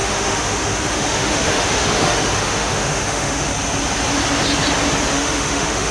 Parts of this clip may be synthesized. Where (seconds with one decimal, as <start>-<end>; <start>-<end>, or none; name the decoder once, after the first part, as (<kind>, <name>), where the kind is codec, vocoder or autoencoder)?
0.0-3.5 (autoencoder, DAC-VAE); 5.1-5.9